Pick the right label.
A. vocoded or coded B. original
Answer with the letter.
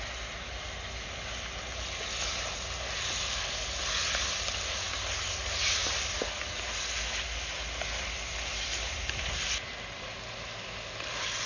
B